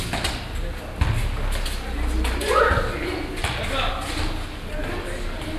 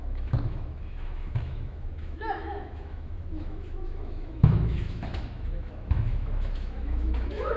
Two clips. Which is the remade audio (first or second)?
second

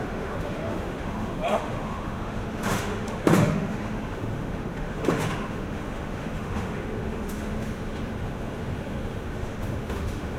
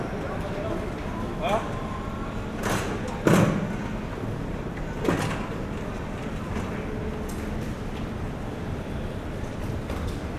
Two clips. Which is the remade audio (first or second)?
first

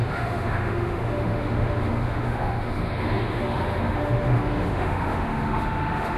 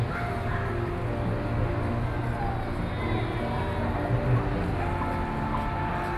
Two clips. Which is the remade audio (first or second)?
first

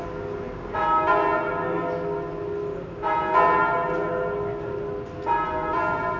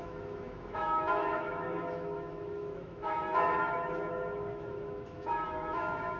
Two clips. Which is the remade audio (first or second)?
second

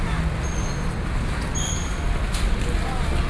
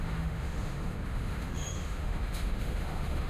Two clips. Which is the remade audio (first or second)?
second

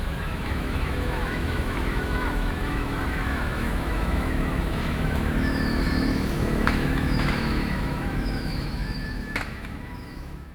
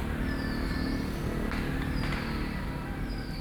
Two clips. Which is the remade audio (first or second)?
first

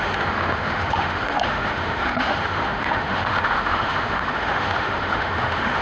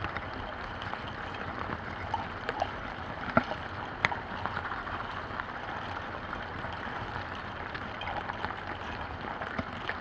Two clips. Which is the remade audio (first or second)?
first